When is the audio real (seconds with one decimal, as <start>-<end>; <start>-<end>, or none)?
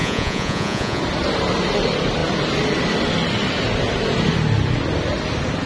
1.0-5.7